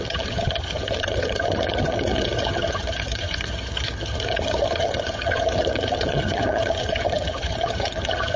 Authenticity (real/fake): fake